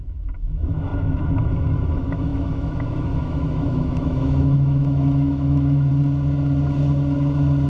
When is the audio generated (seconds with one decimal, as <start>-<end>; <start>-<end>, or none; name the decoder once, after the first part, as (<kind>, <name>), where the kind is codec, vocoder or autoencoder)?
0.0-5.9 (autoencoder, DAC-VAE)